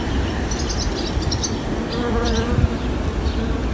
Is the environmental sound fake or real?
real